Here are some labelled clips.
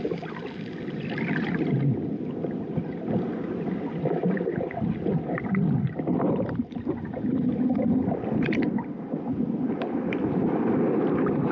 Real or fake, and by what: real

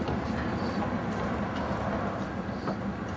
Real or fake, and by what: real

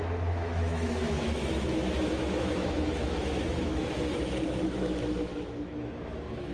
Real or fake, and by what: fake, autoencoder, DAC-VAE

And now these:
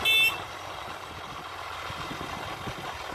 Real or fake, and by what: real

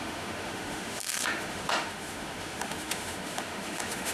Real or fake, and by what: fake, autoencoder, DAC-VAE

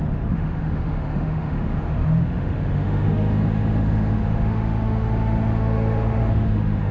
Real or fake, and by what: fake, autoencoder, DAC-VAE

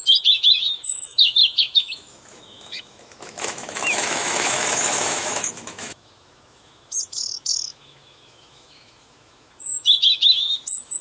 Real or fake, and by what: fake, autoencoder, DAC-VAE